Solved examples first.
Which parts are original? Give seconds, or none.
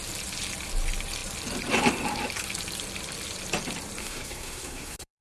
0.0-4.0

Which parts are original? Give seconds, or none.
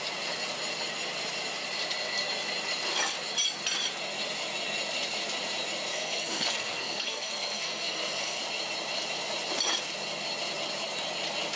0.0-5.9; 8.4-11.6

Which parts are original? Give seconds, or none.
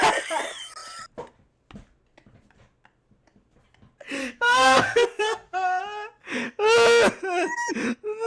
0.0-4.2; 5.8-8.3